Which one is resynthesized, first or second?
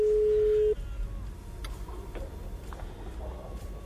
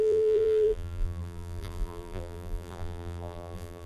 second